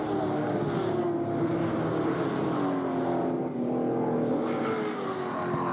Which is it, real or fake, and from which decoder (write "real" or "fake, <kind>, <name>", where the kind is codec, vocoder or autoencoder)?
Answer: real